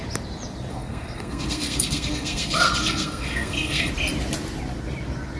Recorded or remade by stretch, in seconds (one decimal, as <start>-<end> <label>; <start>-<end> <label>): 0.0-0.7 recorded; 0.7-3.9 remade; 3.9-5.4 recorded

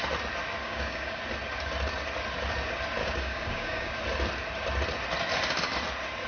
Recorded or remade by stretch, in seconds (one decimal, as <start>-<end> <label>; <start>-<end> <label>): 0.0-0.6 recorded; 0.6-1.2 remade; 1.2-3.0 recorded; 3.0-3.9 remade; 3.9-6.3 recorded

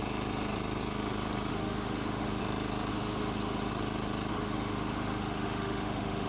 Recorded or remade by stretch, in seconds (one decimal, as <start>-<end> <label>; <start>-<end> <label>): 0.0-1.5 recorded; 1.5-2.4 remade; 2.4-2.9 recorded; 2.9-3.7 remade; 3.7-4.3 recorded; 4.3-6.3 remade

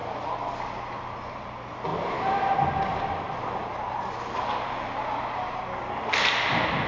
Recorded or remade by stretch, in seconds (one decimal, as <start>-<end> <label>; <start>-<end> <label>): 0.0-6.9 recorded

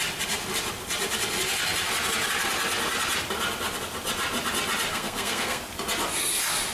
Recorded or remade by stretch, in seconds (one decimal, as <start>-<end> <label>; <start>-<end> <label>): 0.0-4.9 recorded; 4.9-5.6 remade; 5.6-6.7 recorded

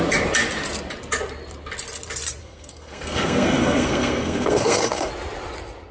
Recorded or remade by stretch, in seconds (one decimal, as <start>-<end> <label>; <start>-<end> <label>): 0.0-2.4 recorded; 2.4-5.1 remade; 5.1-5.9 recorded

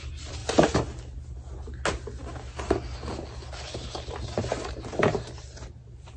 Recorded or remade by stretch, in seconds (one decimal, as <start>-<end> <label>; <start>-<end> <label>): 0.0-0.4 remade; 0.4-4.1 recorded; 4.1-6.2 remade

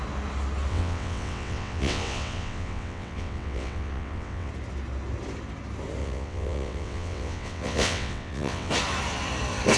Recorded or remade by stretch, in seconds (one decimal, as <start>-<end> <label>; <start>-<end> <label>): 0.0-0.7 recorded; 0.7-4.5 remade; 4.5-6.0 recorded; 6.0-8.7 remade; 8.7-9.8 recorded